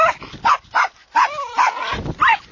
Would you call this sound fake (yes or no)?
no